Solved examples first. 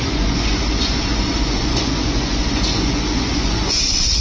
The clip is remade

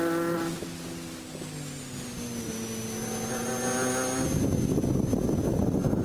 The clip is recorded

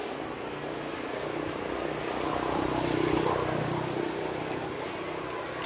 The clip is recorded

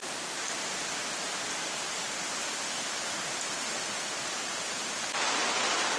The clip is recorded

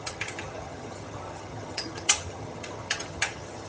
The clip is remade